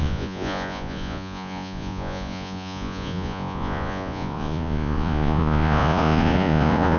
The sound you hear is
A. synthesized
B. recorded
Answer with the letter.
A